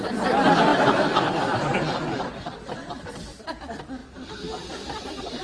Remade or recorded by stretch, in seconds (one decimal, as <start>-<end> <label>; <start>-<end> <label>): 0.0-5.4 recorded